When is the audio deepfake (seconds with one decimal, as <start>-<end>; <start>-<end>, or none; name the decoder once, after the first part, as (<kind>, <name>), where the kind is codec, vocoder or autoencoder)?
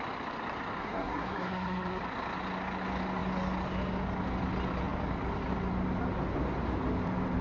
0.8-2.0 (codec, SNAC)